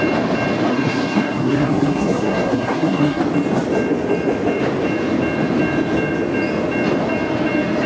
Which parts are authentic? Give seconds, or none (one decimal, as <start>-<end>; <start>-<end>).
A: 0.0-0.7; 3.2-7.9